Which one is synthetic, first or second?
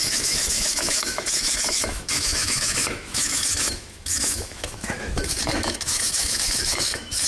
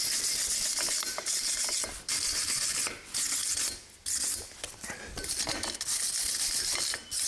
first